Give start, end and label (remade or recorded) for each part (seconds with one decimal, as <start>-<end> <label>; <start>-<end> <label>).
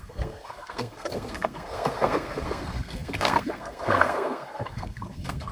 0.0-5.5 remade